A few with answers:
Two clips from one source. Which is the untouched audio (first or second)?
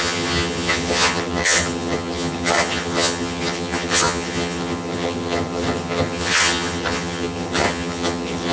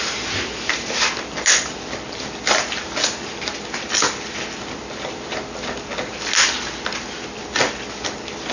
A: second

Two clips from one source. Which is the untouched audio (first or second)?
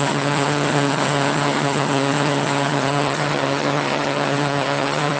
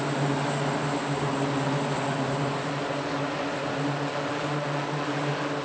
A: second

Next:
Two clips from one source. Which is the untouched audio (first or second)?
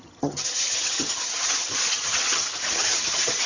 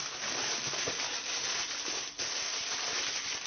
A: second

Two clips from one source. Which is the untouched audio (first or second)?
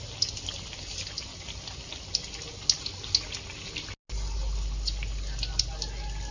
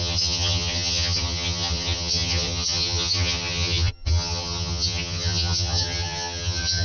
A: first